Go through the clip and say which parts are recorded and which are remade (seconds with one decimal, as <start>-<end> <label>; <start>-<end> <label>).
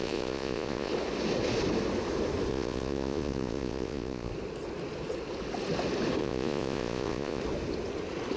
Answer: 0.0-0.9 remade; 0.9-2.5 recorded; 2.5-4.3 remade; 4.3-6.2 recorded; 6.2-7.4 remade; 7.4-8.4 recorded